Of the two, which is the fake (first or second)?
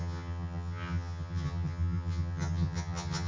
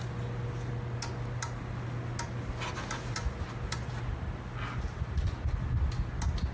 first